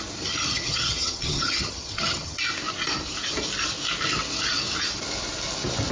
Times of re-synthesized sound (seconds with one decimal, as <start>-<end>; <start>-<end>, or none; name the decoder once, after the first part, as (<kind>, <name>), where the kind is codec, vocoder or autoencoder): 0.5-2.4 (vocoder, HiFi-GAN)